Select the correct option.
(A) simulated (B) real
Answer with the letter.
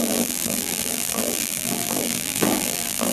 A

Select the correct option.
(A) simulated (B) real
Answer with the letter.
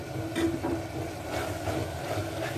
B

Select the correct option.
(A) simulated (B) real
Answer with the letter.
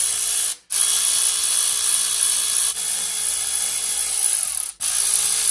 B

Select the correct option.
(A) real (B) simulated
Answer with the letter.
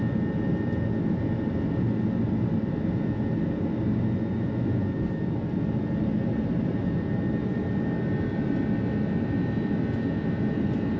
A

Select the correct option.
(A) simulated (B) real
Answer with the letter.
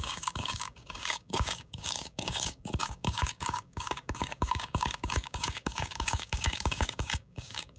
A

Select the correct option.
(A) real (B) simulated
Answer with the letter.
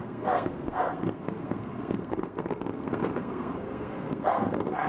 B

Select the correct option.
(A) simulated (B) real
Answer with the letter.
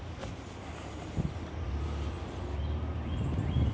B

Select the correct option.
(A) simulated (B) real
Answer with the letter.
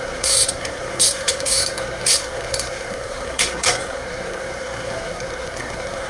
A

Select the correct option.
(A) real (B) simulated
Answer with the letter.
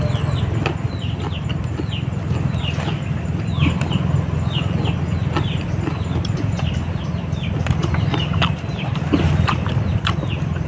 A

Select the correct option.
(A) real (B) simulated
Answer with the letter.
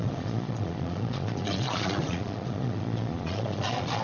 B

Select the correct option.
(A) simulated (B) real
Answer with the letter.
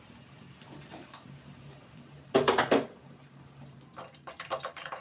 A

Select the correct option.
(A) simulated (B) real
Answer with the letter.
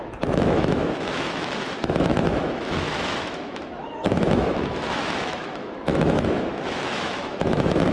A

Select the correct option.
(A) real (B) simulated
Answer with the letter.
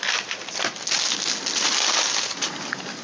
A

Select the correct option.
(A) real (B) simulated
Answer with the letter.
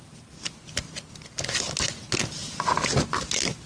A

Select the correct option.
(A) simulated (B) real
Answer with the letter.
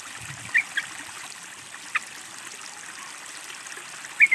B